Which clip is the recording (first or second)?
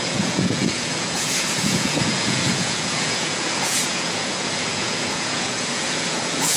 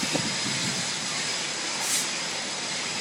second